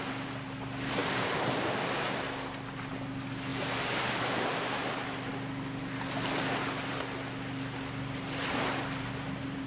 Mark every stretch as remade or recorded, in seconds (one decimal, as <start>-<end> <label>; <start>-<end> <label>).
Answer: 0.0-9.7 recorded